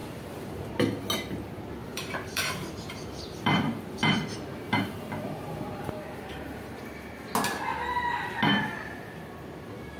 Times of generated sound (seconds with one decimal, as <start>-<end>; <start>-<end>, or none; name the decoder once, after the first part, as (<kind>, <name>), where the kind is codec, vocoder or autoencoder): 0.0-0.7 (vocoder, BigVGAN v2); 1.8-6.8